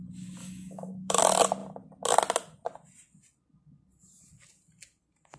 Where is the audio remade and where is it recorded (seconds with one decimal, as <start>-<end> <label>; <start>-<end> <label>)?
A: 0.0-0.4 recorded; 0.4-1.2 remade; 1.2-5.4 recorded